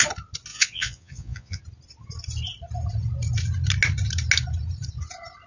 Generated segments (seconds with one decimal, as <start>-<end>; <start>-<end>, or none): 0.5-1.6